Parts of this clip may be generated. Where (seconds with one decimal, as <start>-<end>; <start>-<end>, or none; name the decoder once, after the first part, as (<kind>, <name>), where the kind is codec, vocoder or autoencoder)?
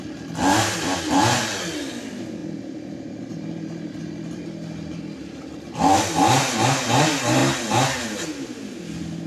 none